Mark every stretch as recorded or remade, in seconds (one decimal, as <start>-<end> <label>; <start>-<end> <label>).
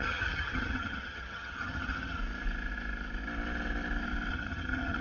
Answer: 0.0-2.2 remade; 2.2-4.3 recorded; 4.3-5.0 remade